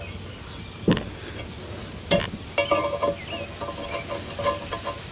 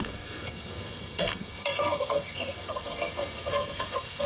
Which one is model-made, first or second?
second